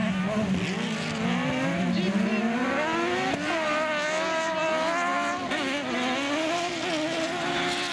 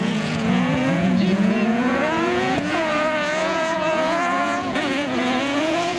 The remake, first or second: second